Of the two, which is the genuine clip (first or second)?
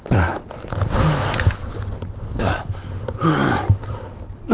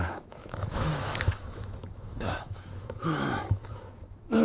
first